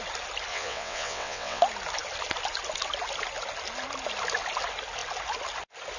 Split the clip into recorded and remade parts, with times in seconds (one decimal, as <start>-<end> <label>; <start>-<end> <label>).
0.0-0.5 recorded; 0.5-1.6 remade; 1.6-6.0 recorded